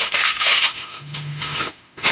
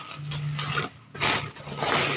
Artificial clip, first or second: first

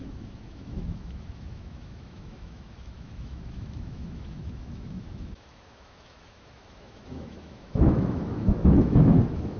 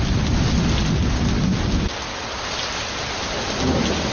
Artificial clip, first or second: first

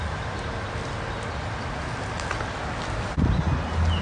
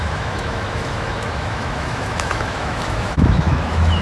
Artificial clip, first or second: second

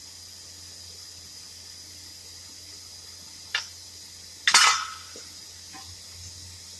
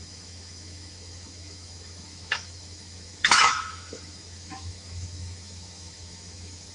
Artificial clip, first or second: second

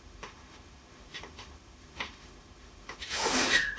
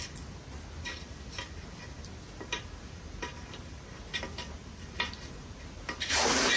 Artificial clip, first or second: first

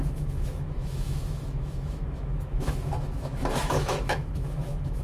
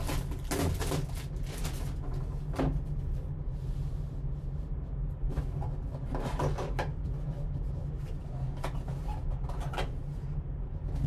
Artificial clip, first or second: first